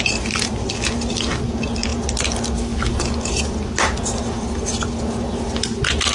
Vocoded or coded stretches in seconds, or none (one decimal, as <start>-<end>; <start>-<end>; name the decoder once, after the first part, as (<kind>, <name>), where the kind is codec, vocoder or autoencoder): none